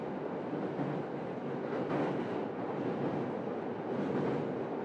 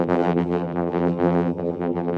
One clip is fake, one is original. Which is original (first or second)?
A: first